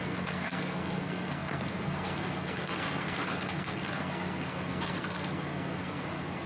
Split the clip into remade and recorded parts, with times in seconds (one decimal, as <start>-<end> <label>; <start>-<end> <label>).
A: 0.0-6.5 remade

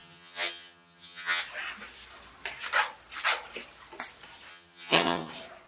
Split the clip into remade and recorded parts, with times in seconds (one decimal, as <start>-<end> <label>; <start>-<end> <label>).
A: 0.0-1.4 remade; 1.4-4.5 recorded; 4.5-5.3 remade; 5.3-5.7 recorded

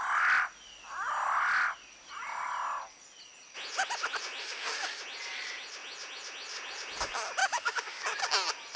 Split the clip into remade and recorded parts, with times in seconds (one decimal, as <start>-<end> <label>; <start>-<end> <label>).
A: 0.0-4.4 recorded; 4.4-5.0 remade; 5.0-7.4 recorded; 7.4-8.0 remade; 8.0-8.8 recorded